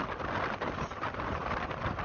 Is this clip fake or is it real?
real